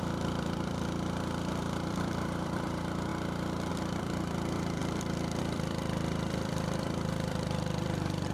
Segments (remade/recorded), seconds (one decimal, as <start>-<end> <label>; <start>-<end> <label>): 0.0-3.1 remade; 3.1-3.7 recorded; 3.7-4.8 remade; 4.8-5.4 recorded; 5.4-8.3 remade